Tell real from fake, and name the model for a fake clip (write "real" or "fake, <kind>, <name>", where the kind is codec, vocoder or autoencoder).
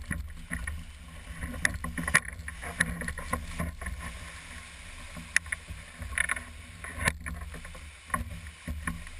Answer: real